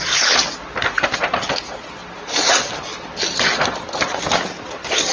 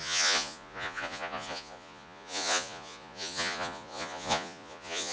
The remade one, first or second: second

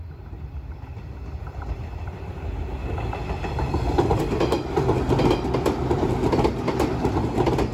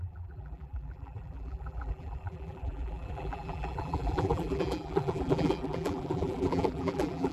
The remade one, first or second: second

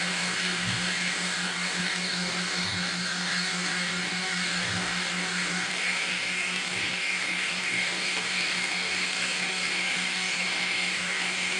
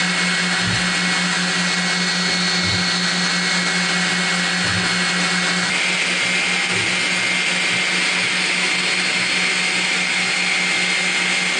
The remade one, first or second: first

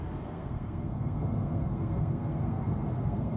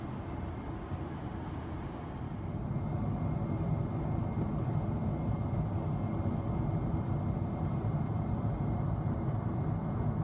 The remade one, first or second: first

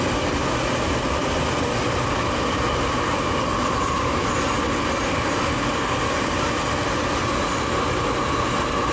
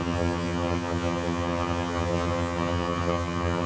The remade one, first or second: second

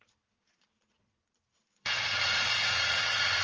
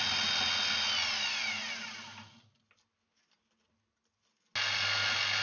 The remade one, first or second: first